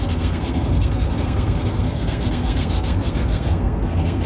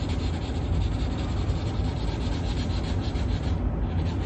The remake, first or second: first